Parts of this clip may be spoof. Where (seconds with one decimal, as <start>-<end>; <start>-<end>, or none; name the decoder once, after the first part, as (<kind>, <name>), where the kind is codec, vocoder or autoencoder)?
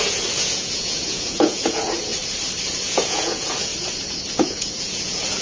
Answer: 0.0-2.1 (vocoder, Vocos); 2.8-3.7; 4.3-5.4